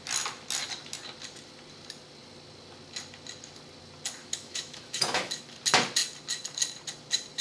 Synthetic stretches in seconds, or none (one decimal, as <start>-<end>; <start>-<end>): 4.2-5.3